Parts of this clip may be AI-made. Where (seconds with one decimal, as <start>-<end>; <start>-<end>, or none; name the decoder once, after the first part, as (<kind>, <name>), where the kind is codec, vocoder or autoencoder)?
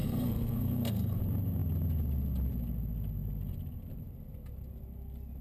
0.0-1.2 (codec, SNAC)